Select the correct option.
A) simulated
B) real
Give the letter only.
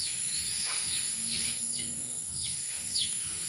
A